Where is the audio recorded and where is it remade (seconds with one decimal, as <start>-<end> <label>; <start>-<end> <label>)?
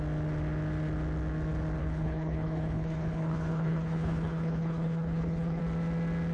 0.0-1.8 recorded; 1.8-5.6 remade; 5.6-6.3 recorded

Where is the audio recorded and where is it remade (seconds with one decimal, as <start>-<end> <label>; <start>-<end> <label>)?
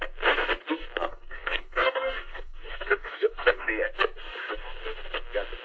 0.0-1.1 recorded; 1.1-3.7 remade; 3.7-5.6 recorded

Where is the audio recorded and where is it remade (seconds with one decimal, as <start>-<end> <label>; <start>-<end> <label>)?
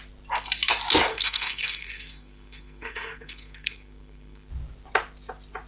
0.0-1.1 recorded; 1.1-4.5 remade; 4.5-5.7 recorded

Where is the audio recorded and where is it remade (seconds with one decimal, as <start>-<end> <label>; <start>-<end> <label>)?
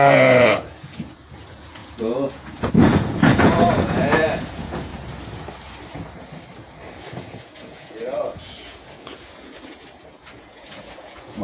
0.0-4.9 remade; 4.9-7.0 recorded; 7.0-11.4 remade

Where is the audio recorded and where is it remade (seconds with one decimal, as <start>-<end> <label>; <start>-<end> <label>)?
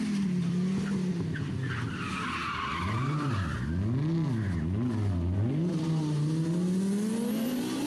0.0-2.4 recorded; 2.4-3.3 remade; 3.3-7.9 recorded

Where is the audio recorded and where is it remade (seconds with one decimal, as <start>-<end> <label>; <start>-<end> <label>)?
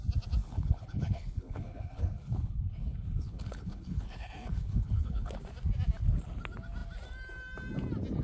0.0-0.4 recorded; 0.4-5.3 remade; 5.3-8.2 recorded